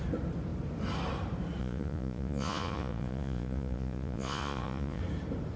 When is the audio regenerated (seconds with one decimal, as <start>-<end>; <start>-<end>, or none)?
1.6-5.0